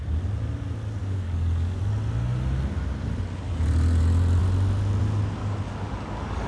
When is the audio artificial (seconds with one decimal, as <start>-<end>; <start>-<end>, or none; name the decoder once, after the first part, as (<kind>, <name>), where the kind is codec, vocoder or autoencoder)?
1.0-1.8 (codec, DAC); 5.4-6.5